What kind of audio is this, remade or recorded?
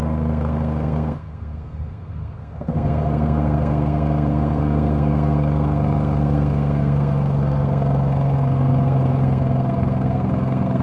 remade